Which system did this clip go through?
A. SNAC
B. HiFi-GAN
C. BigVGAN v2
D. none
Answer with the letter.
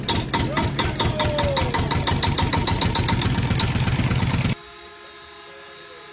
D